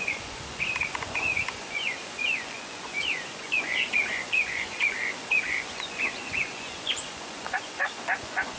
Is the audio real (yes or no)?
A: no